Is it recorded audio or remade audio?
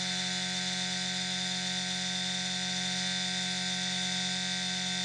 recorded